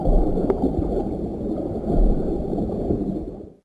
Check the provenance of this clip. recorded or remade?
recorded